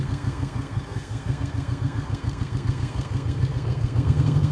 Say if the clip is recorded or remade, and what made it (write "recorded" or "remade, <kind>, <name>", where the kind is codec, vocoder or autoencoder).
remade, codec, SNAC